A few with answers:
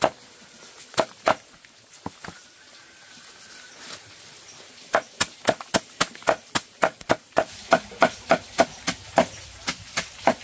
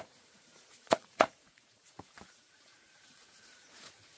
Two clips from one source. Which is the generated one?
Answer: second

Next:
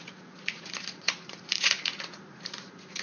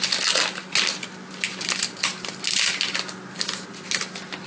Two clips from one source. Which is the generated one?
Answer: first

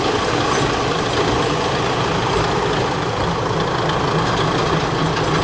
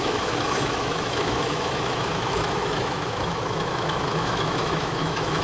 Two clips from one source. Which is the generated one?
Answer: second